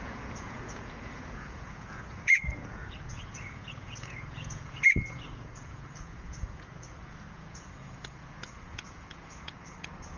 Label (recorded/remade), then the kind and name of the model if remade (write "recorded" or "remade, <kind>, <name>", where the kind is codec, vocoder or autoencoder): remade, vocoder, Vocos